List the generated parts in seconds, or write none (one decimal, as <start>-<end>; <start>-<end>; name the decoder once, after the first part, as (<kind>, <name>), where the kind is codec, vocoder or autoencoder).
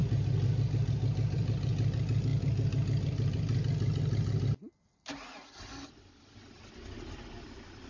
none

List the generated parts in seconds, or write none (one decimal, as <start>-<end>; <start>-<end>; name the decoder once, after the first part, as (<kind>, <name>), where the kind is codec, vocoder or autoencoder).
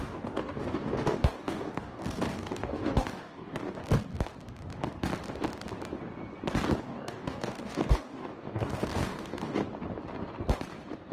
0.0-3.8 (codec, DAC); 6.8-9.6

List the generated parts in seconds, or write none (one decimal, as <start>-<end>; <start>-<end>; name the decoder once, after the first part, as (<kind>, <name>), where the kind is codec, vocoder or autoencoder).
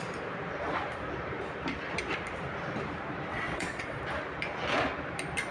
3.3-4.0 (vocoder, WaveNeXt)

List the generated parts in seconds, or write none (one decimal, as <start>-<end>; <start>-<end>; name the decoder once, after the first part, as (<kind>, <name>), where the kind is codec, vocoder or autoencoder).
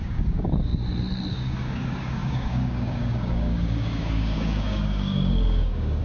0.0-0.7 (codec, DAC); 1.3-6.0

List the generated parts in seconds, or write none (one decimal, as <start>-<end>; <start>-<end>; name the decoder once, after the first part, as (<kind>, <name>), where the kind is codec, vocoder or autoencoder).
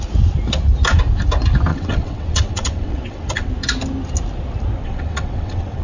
1.7-3.5 (vocoder, WaveNeXt); 4.8-5.8